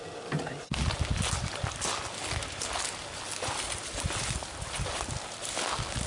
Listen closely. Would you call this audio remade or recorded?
recorded